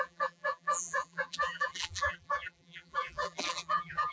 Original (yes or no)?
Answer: no